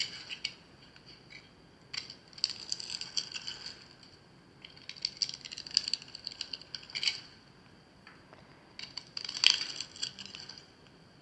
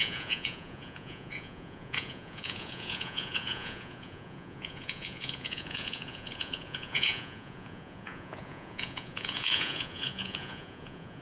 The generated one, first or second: second